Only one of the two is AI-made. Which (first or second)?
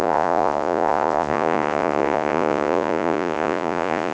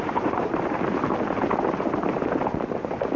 first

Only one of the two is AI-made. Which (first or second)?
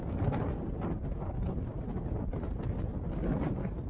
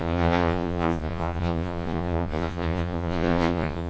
second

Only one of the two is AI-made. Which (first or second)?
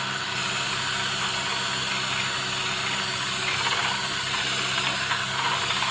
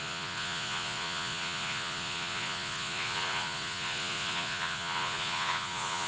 second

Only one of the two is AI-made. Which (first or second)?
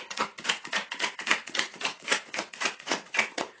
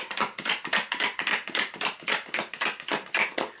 first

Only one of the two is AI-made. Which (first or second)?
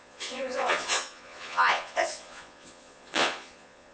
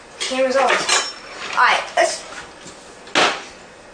first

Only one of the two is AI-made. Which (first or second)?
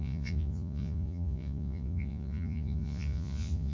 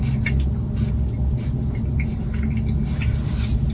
first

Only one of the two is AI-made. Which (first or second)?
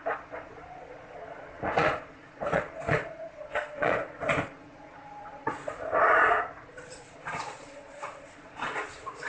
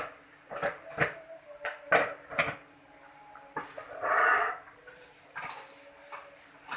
first